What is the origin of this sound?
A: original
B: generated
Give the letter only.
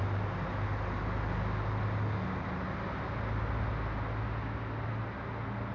A